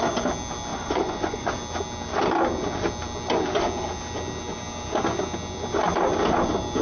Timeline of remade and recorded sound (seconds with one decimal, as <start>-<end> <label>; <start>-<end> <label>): 0.0-0.7 recorded; 0.7-1.5 remade; 1.5-6.8 recorded

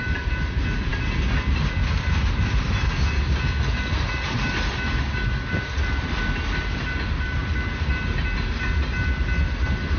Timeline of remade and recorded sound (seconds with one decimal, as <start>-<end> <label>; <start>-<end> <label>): 0.0-10.0 recorded

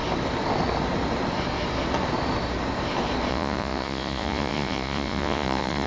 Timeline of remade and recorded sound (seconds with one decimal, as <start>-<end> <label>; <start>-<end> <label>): 0.0-3.3 recorded; 3.3-5.9 remade

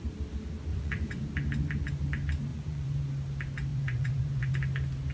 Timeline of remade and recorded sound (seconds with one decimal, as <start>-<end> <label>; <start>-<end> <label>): 0.0-0.7 recorded; 0.7-1.2 remade; 1.2-2.5 recorded; 2.5-3.0 remade; 3.0-3.7 recorded; 3.7-4.5 remade; 4.5-5.1 recorded

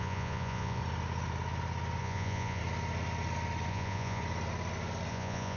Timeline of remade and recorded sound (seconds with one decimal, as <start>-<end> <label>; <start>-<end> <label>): 0.0-0.8 remade; 0.8-2.0 recorded; 2.0-2.6 remade; 2.6-3.7 recorded; 3.7-4.2 remade; 4.2-5.1 recorded; 5.1-5.6 remade

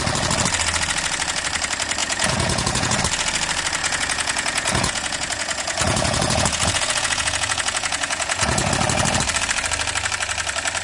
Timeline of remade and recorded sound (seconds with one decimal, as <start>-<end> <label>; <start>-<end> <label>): 0.0-2.0 recorded; 2.0-3.0 remade; 3.0-3.8 recorded; 3.8-8.7 remade; 8.7-10.8 recorded

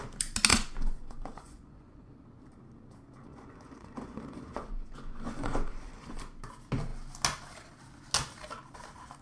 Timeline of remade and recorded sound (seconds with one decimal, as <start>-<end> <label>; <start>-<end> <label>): 0.0-0.5 recorded; 0.5-2.1 remade; 2.1-3.3 recorded; 3.3-6.2 remade; 6.2-9.2 recorded

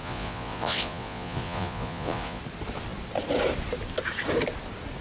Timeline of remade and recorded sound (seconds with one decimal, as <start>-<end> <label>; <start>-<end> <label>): 0.0-2.4 remade; 2.4-5.0 recorded